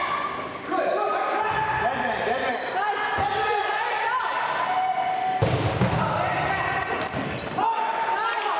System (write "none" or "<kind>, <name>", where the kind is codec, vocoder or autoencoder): none